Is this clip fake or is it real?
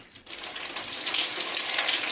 real